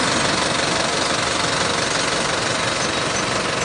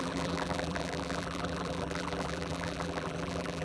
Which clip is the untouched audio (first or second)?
first